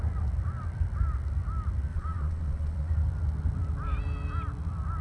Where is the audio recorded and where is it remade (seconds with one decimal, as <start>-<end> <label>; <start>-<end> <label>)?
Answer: 0.0-1.9 recorded; 1.9-2.9 remade; 2.9-5.0 recorded